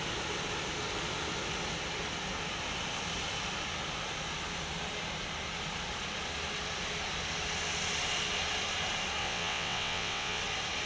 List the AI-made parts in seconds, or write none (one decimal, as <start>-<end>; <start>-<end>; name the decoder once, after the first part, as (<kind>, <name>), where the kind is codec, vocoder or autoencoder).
9.2-10.4 (vocoder, WaveNeXt)